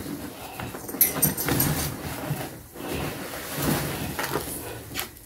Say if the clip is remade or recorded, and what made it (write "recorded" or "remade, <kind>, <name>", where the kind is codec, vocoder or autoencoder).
recorded